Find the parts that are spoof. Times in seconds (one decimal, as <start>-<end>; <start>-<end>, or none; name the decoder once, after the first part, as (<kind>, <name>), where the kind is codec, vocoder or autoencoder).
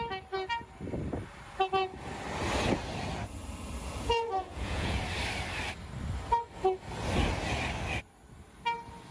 4.4-5.0 (vocoder, Vocos)